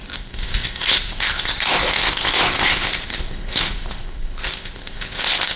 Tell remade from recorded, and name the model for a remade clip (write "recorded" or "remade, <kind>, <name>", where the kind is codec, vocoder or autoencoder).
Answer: remade, codec, ZipCodec